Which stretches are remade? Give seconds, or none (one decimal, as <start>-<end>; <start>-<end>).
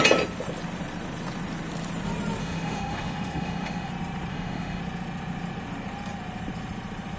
2.4-3.9; 4.3-4.8